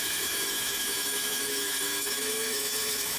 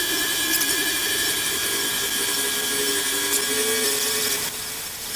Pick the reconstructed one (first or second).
first